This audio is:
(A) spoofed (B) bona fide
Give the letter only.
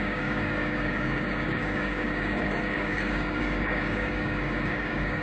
A